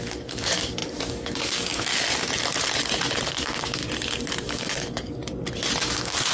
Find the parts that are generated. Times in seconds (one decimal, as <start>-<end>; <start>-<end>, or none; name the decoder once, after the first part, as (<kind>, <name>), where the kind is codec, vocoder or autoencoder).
0.0-1.9 (codec, DAC); 3.3-3.8; 4.3-5.2; 5.8-6.3